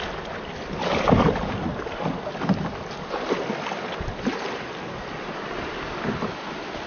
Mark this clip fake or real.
real